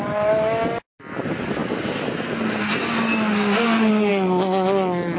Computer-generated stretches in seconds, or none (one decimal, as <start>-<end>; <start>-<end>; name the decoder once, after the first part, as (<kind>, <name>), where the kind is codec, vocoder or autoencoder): none